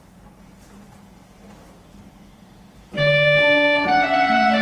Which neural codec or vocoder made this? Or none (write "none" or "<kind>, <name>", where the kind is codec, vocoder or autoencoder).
vocoder, BigVGAN v2